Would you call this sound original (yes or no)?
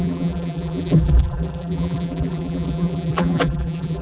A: no